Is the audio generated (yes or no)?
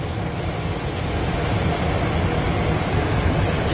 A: no